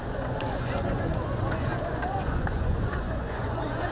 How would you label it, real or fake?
fake